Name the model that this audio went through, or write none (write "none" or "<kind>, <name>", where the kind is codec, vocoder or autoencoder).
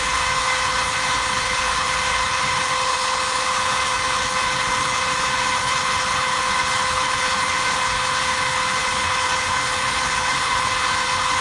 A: codec, HILCodec